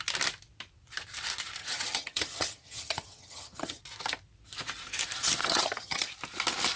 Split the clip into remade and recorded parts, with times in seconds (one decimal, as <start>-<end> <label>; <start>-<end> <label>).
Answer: 0.0-1.6 recorded; 1.6-3.8 remade; 3.8-5.4 recorded; 5.4-6.1 remade; 6.1-6.8 recorded